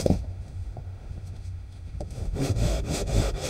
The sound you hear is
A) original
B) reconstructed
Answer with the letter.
B